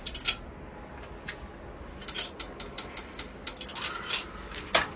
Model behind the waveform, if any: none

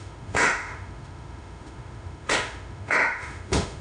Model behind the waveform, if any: autoencoder, DAC-VAE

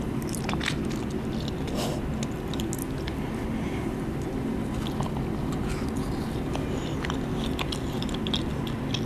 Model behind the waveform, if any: none